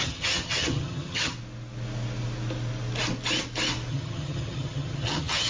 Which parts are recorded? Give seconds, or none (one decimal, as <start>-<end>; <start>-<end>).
1.3-3.9